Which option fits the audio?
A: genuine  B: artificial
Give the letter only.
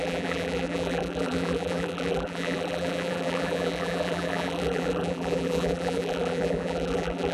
B